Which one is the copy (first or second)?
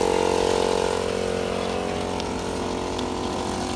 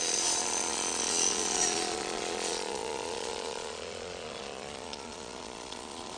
second